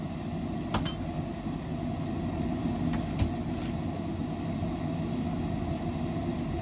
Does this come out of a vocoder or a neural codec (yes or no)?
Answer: no